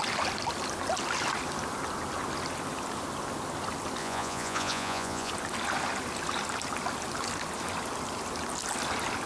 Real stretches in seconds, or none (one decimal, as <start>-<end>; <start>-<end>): 0.0-4.0; 5.3-9.3